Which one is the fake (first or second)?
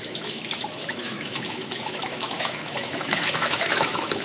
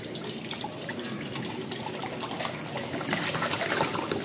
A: first